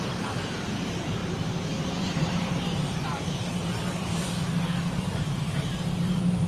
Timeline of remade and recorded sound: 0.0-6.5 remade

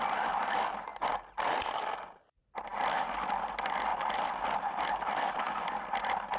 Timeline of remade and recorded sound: 0.0-6.4 recorded